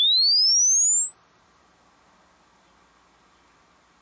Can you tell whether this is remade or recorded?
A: recorded